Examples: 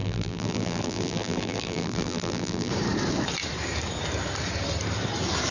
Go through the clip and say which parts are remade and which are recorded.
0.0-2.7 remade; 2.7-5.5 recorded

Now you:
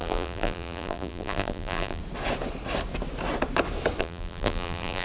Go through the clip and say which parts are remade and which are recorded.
0.0-2.0 remade; 2.0-4.0 recorded; 4.0-5.0 remade

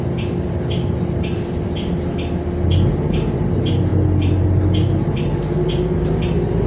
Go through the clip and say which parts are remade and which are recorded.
0.0-6.7 recorded

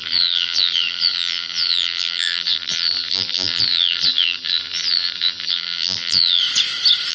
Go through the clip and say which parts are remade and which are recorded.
0.0-6.4 remade; 6.4-7.1 recorded

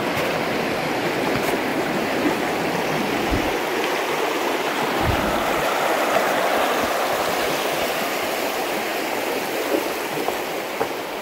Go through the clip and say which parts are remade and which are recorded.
0.0-1.7 recorded; 1.7-2.4 remade; 2.4-11.2 recorded

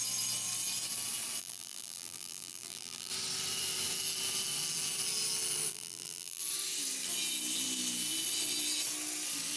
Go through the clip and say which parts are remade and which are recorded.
0.0-1.4 recorded; 1.4-3.1 remade; 3.1-5.7 recorded; 5.7-6.4 remade; 6.4-9.6 recorded

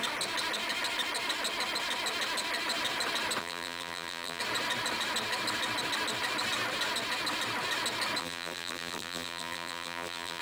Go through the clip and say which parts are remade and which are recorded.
0.0-3.4 recorded; 3.4-4.4 remade; 4.4-8.2 recorded; 8.2-10.4 remade